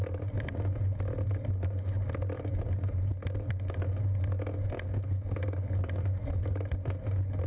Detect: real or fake real